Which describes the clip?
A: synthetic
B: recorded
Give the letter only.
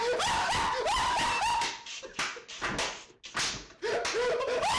B